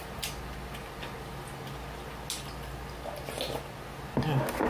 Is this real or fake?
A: real